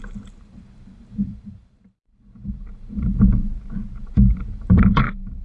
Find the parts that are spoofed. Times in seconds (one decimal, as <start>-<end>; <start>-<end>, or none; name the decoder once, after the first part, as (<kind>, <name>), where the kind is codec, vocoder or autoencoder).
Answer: 0.0-3.5 (vocoder, BigVGAN v2); 4.0-5.4

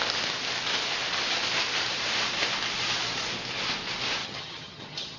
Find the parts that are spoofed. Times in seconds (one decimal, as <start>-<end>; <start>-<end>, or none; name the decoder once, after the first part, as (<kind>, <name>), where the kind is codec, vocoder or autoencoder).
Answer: 4.2-5.2 (vocoder, HiFi-GAN)

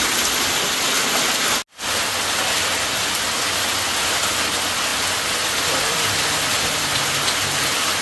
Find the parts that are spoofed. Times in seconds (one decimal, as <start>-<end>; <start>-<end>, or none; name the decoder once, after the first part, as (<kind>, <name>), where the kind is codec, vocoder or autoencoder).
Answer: none